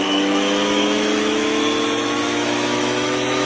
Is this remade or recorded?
remade